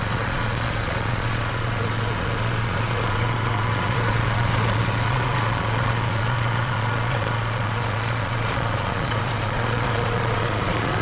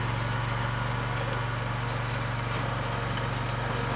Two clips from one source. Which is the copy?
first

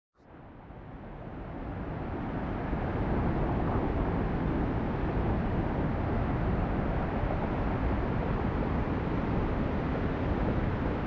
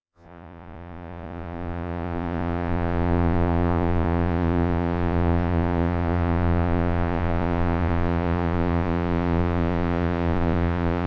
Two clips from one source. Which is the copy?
second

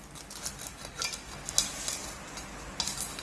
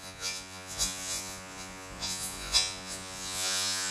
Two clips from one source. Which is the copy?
second